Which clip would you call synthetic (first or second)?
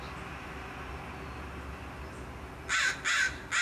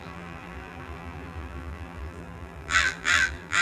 second